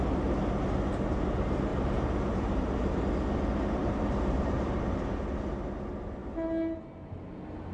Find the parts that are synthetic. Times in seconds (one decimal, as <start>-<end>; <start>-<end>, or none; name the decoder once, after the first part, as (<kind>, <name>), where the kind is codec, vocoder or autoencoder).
1.7-3.0 (vocoder, BigVGAN v2); 3.8-5.2